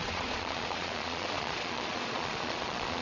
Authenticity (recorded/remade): remade